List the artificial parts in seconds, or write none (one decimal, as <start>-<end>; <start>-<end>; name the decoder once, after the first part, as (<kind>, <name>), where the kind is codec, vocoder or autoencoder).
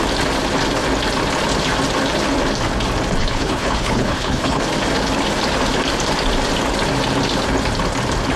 3.2-4.6 (codec, HILCodec)